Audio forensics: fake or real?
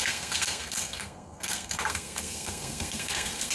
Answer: fake